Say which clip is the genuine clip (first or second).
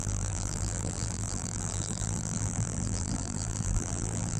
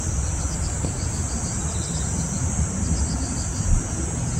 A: second